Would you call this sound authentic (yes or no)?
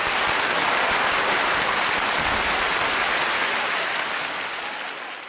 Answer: yes